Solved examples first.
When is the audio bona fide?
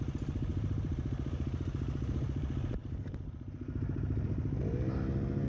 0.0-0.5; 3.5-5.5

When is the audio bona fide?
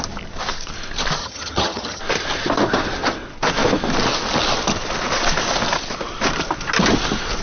0.0-1.2; 2.0-7.4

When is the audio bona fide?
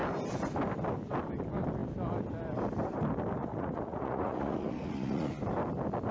0.0-3.4; 5.3-6.1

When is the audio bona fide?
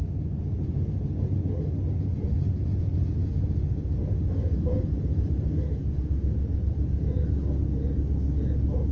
0.0-8.9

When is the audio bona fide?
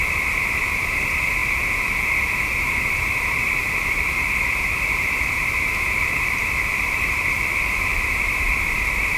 1.4-2.6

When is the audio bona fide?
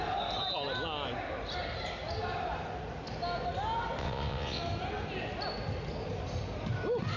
0.0-4.0; 4.6-7.2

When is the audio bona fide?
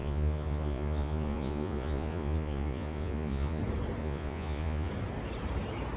3.6-4.0; 4.9-6.0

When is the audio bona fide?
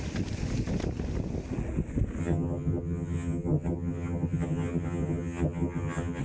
0.0-2.2